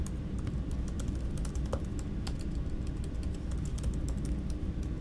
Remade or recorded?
recorded